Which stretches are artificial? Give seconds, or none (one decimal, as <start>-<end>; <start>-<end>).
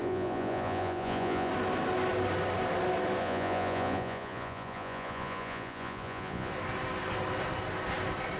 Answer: 0.0-1.5; 3.2-6.5